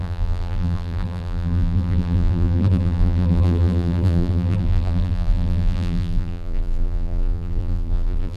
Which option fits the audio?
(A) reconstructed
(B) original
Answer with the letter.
A